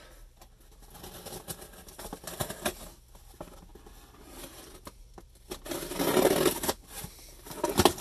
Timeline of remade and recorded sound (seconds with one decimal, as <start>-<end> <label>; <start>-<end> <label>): 0.0-8.0 recorded